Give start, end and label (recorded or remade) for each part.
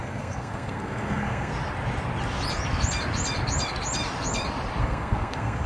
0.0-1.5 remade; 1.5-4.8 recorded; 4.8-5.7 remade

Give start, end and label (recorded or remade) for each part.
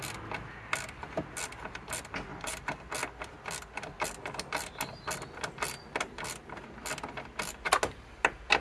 0.0-2.3 recorded; 2.3-2.9 remade; 2.9-8.6 recorded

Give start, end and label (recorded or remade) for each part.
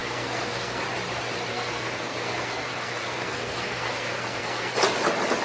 0.0-0.8 remade; 0.8-1.5 recorded; 1.5-4.7 remade; 4.7-5.4 recorded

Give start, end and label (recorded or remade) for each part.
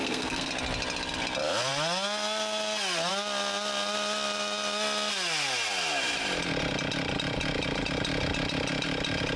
0.0-0.5 remade; 0.5-9.4 recorded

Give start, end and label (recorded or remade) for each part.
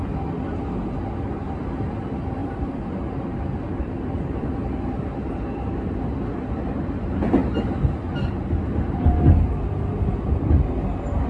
0.0-2.4 recorded; 2.4-7.0 remade; 7.0-7.4 recorded; 7.4-8.4 remade; 8.4-11.3 recorded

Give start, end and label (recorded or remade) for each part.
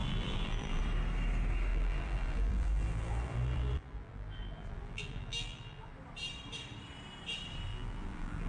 0.0-0.8 remade; 0.8-1.7 recorded; 1.7-5.9 remade; 5.9-7.7 recorded; 7.7-8.5 remade